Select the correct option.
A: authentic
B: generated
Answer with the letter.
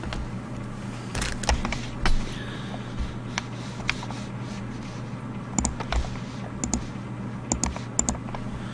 A